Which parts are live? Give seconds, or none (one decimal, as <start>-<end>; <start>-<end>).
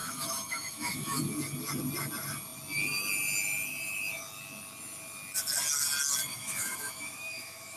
1.2-6.3